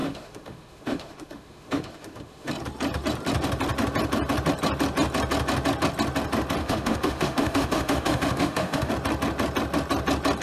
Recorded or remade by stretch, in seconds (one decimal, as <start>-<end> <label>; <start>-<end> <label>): 0.0-2.5 remade; 2.5-6.6 recorded; 6.6-8.9 remade; 8.9-10.4 recorded

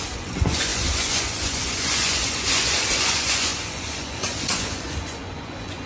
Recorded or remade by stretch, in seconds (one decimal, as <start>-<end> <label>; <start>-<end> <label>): 0.0-5.9 remade